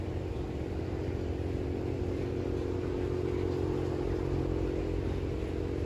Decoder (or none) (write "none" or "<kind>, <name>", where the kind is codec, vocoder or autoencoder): none